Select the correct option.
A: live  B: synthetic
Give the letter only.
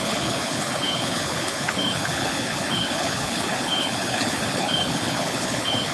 B